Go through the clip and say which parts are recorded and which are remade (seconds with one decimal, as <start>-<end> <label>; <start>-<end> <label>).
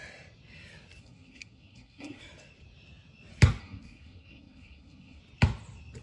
0.0-1.0 recorded; 1.0-2.2 remade; 2.2-3.6 recorded; 3.6-5.2 remade; 5.2-6.0 recorded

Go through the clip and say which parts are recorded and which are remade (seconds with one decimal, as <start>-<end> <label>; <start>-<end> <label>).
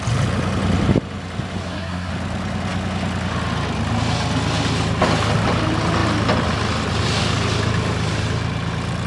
0.0-1.6 recorded; 1.6-2.1 remade; 2.1-9.1 recorded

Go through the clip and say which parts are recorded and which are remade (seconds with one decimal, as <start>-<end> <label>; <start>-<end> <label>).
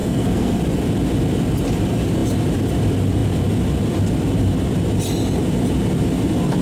0.0-0.6 remade; 0.6-6.6 recorded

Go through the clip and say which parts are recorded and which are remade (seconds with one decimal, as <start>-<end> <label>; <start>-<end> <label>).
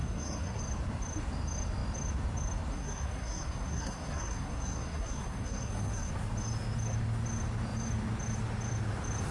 0.0-0.6 remade; 0.6-2.7 recorded; 2.7-6.1 remade; 6.1-9.3 recorded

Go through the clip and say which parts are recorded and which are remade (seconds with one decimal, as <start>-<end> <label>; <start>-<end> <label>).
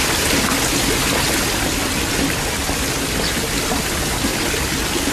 0.0-5.1 recorded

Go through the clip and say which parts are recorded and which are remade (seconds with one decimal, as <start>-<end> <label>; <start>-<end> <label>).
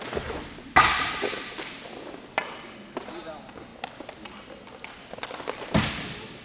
0.0-6.4 recorded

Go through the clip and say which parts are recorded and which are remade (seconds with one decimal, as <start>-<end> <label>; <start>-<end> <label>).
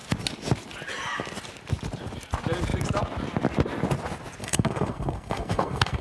0.0-4.4 recorded; 4.4-6.0 remade